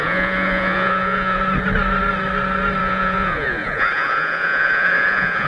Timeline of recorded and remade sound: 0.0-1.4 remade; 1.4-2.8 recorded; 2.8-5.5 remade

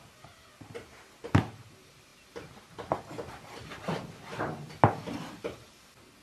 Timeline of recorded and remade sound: 0.0-6.2 recorded

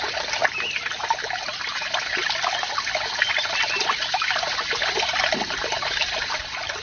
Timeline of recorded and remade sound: 0.0-6.8 recorded

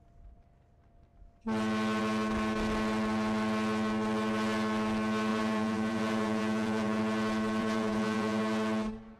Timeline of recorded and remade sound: 0.0-5.3 recorded; 5.3-7.0 remade; 7.0-7.6 recorded; 7.6-8.4 remade; 8.4-9.2 recorded

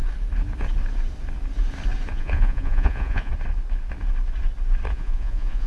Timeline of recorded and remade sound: 0.0-2.1 recorded; 2.1-3.3 remade; 3.3-4.9 recorded; 4.9-5.7 remade

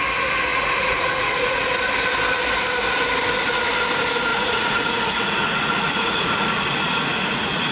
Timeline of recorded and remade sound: 0.0-0.5 recorded; 0.5-1.6 remade; 1.6-4.3 recorded; 4.3-7.7 remade